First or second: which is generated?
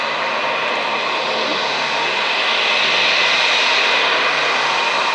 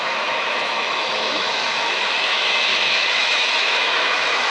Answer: second